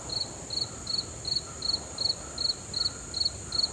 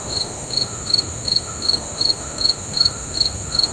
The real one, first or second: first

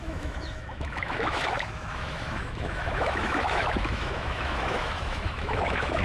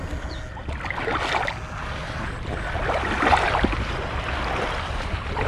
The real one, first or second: second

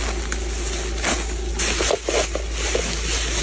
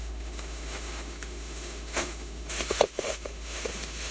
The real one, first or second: first